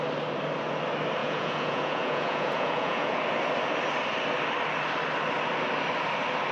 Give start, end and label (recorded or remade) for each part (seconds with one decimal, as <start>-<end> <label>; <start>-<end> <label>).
0.0-1.2 recorded; 1.2-3.2 remade; 3.2-6.5 recorded

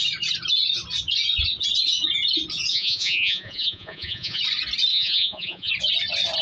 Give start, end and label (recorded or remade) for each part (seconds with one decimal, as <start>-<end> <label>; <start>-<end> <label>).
0.0-2.7 recorded; 2.7-4.4 remade; 4.4-4.9 recorded; 4.9-5.7 remade; 5.7-6.4 recorded

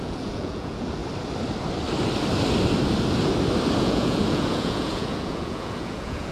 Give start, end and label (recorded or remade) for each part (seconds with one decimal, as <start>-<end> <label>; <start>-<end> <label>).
0.0-1.0 remade; 1.0-3.8 recorded; 3.8-6.3 remade